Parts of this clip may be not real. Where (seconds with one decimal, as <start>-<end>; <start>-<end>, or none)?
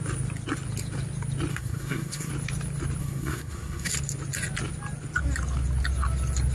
1.5-2.3; 3.0-3.9